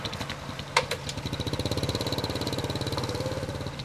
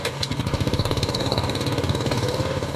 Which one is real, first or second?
first